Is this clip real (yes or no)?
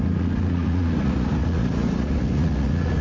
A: no